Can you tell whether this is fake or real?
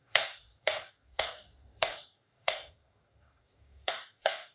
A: fake